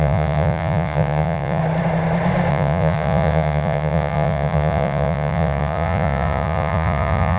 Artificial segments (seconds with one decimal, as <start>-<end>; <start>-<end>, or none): 0.0-1.6; 2.5-7.4